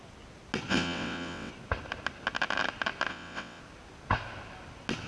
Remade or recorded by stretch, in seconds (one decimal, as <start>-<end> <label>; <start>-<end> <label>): 0.0-0.7 recorded; 0.7-1.5 remade; 1.5-3.1 recorded; 3.1-3.6 remade; 3.6-5.1 recorded